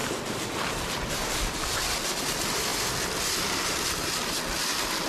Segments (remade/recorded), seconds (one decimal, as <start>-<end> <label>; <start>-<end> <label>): 0.0-5.1 recorded

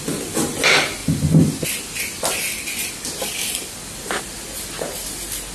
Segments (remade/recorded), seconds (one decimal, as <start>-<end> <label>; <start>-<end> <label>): 0.0-5.5 recorded

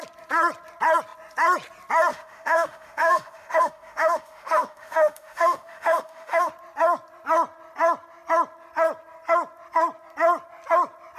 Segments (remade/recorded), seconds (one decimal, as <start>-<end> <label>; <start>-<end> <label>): 0.0-2.1 recorded; 2.1-6.5 remade; 6.5-11.2 recorded

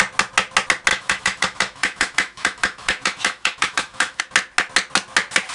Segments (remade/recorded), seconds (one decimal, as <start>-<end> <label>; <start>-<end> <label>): 0.0-0.9 recorded; 0.9-4.2 remade; 4.2-5.5 recorded

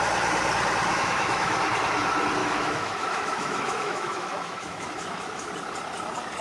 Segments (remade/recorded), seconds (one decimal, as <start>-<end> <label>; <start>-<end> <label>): 0.0-0.9 recorded; 0.9-1.6 remade; 1.6-2.4 recorded; 2.4-5.5 remade; 5.5-6.4 recorded

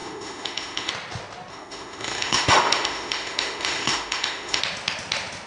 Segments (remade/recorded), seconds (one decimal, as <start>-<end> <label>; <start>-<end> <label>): 0.0-0.9 remade; 0.9-1.5 recorded; 1.5-4.6 remade; 4.6-5.5 recorded

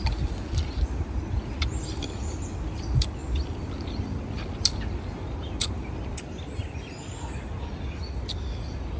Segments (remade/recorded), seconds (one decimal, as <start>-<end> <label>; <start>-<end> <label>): 0.0-9.0 recorded

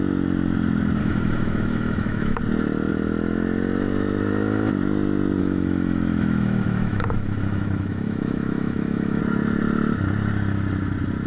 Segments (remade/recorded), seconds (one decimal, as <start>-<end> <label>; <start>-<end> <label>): 0.0-1.0 recorded; 1.0-2.4 remade; 2.4-5.4 recorded; 5.4-9.2 remade; 9.2-11.3 recorded